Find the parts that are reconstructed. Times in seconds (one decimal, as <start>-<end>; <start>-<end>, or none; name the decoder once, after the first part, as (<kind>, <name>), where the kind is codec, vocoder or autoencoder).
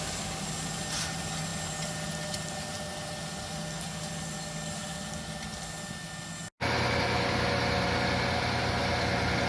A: none